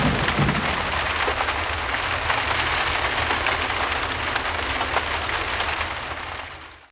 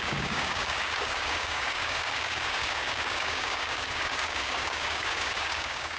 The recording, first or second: first